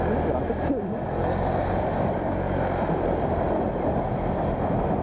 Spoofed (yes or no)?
yes